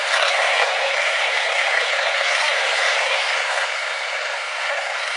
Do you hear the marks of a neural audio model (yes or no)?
yes